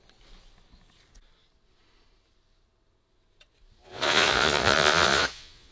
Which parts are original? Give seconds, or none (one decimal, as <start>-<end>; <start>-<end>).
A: 0.0-3.8